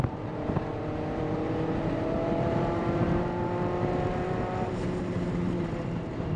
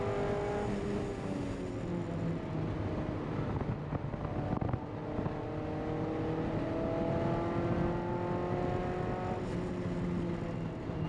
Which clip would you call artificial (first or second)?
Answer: first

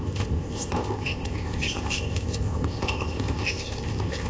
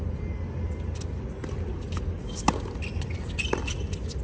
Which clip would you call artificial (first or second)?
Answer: first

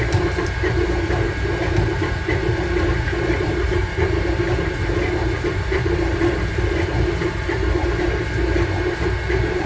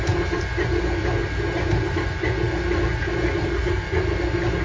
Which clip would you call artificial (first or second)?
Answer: first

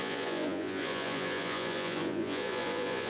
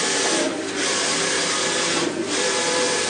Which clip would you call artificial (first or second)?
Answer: first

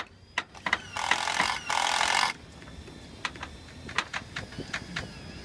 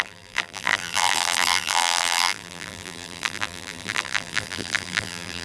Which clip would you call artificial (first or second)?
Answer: second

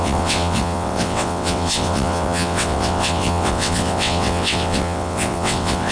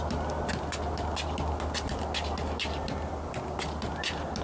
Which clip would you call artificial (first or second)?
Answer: first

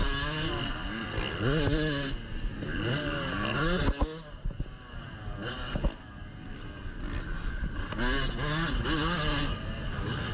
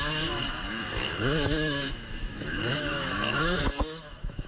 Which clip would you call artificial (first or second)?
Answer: second